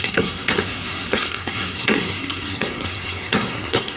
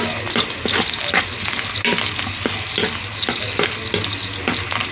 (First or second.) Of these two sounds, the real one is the second